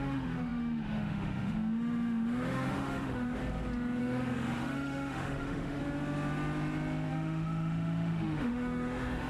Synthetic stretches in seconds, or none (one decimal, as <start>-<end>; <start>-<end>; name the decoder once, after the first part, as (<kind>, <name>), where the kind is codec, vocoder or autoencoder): 0.0-3.4 (autoencoder, DAC-VAE); 4.0-5.8; 7.1-9.3